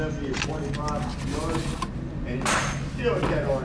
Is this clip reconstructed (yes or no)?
no